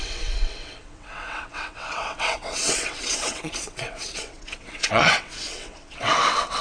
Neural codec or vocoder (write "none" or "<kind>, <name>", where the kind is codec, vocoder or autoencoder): vocoder, WaveNeXt